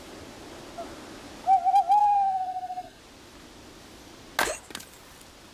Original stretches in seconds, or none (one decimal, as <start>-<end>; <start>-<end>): 0.0-2.0; 3.0-5.5